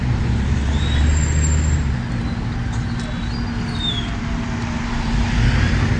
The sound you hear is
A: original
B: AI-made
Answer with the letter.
A